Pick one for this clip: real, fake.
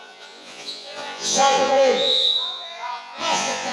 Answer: fake